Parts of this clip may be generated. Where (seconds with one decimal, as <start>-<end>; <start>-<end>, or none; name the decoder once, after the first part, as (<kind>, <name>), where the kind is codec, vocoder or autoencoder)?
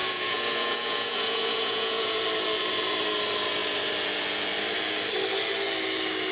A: 0.0-2.2 (vocoder, Vocos)